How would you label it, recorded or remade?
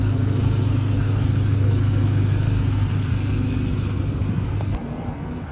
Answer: remade